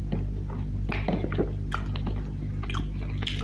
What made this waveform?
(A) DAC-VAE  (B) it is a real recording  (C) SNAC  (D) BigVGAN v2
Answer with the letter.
B